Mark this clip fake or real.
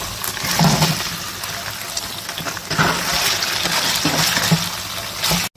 real